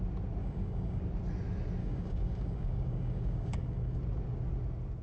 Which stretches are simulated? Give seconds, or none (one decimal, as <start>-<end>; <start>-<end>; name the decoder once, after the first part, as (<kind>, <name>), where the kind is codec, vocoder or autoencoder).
0.4-1.0 (codec, DAC); 1.8-4.0